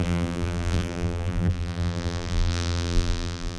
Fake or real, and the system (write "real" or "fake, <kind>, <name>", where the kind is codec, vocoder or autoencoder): fake, vocoder, BigVGAN v2